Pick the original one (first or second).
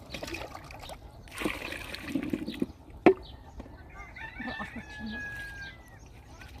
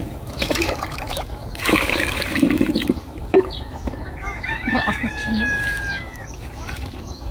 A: first